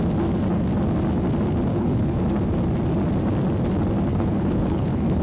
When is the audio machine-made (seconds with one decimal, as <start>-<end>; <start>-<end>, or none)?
1.7-2.2; 4.1-5.2